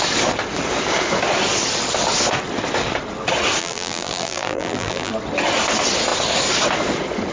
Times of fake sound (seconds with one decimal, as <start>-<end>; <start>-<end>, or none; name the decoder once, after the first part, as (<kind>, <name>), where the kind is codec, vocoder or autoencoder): 3.6-5.1 (vocoder, BigVGAN v2)